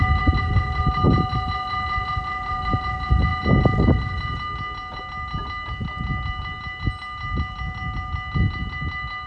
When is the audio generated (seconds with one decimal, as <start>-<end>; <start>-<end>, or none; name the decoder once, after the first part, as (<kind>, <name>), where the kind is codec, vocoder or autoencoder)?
none